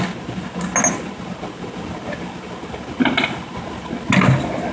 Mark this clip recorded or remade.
recorded